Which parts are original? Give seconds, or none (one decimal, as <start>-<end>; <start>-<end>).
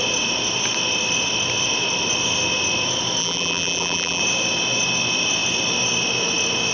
0.0-3.2; 4.2-6.7